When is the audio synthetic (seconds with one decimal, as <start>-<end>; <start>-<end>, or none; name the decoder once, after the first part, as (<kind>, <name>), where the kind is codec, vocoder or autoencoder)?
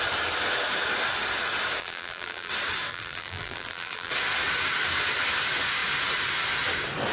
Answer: 1.8-2.5 (vocoder, BigVGAN v2); 2.9-4.1